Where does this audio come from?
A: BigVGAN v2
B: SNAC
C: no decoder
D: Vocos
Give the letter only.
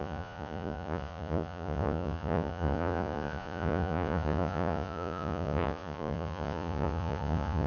D